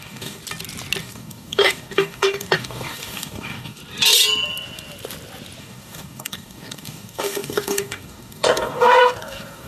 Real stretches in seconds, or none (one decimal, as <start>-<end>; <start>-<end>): 0.4-1.0; 3.8-5.6